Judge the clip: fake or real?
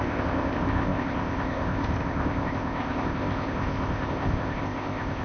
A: fake